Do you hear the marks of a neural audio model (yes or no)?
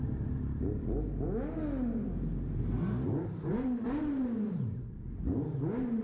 no